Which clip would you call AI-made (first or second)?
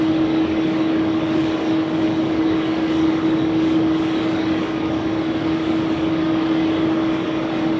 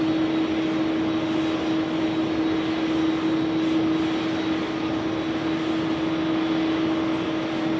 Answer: first